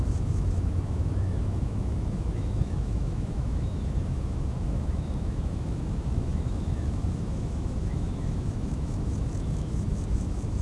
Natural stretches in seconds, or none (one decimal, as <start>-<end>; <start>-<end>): none